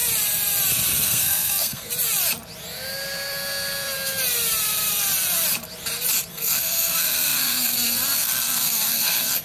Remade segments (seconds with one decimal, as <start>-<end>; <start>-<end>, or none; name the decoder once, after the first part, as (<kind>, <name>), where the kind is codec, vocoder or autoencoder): 0.9-1.9 (codec, SNAC); 6.3-9.4